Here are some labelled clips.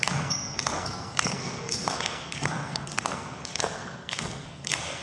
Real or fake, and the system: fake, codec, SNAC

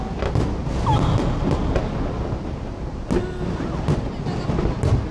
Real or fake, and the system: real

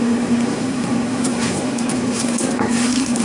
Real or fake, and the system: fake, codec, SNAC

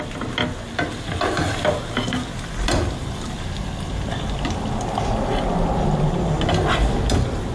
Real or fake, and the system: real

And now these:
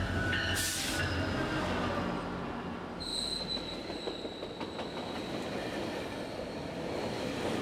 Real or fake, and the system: real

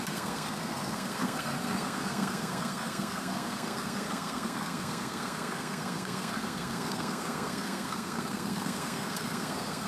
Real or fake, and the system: fake, codec, SNAC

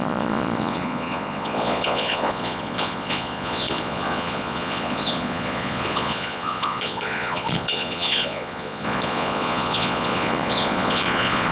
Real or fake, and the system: fake, vocoder, Vocos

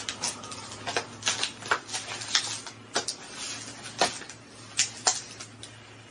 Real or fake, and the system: real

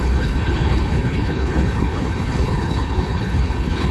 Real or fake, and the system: fake, codec, HILCodec